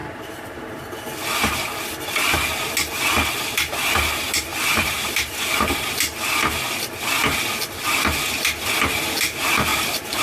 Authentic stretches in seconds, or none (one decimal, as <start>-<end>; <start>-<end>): 0.8-4.5; 5.9-9.7